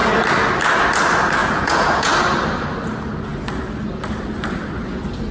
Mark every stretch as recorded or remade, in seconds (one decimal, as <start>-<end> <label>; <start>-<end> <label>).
0.0-1.4 recorded; 1.4-2.1 remade; 2.1-5.3 recorded